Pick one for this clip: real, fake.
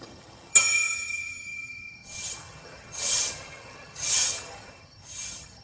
fake